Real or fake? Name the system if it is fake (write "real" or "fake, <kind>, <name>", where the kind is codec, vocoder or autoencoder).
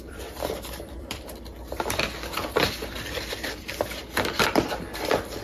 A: fake, vocoder, BigVGAN v2